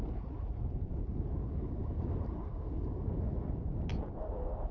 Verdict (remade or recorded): recorded